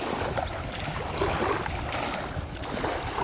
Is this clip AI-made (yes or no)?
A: no